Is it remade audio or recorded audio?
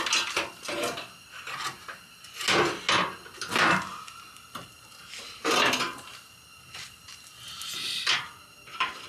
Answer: recorded